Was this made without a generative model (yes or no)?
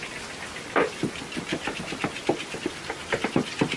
yes